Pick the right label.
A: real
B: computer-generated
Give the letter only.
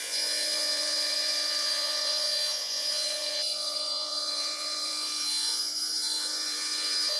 B